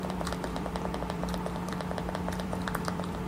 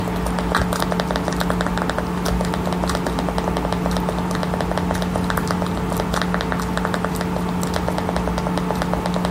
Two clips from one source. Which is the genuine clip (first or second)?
second